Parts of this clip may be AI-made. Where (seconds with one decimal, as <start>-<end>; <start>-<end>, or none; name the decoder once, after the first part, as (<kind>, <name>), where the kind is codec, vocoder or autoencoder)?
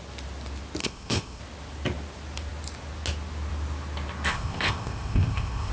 0.8-1.4 (codec, ZipCodec); 4.3-5.7